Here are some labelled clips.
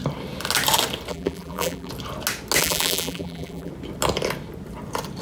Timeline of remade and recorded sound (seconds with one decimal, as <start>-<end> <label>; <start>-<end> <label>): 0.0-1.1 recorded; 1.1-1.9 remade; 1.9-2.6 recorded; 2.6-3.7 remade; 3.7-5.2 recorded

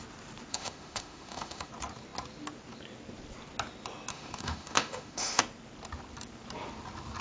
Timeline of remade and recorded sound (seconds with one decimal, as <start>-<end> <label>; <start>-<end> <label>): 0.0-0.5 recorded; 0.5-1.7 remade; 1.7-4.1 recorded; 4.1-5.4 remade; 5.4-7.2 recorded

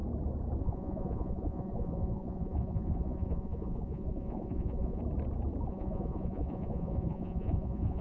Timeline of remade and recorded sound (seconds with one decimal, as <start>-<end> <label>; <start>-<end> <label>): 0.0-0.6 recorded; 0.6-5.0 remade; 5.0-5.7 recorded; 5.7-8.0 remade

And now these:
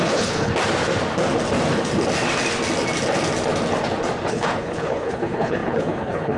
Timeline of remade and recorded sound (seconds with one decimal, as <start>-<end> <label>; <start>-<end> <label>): 0.0-0.5 remade; 0.5-4.3 recorded; 4.3-6.4 remade

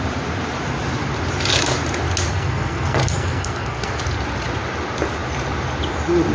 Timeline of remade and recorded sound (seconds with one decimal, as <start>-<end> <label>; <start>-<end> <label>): 0.0-2.3 recorded; 2.3-4.0 remade; 4.0-6.3 recorded